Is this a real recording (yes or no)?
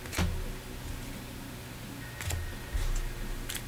yes